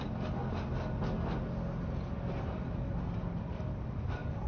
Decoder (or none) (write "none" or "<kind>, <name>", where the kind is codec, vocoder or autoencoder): none